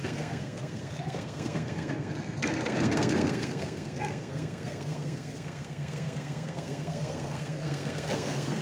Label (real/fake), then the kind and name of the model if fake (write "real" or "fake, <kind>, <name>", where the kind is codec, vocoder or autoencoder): fake, codec, SNAC